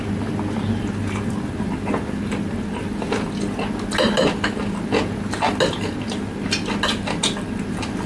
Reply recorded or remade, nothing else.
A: recorded